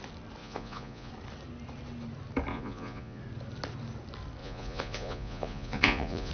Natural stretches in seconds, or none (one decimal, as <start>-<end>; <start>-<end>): 0.0-0.4; 1.1-2.5; 3.2-4.4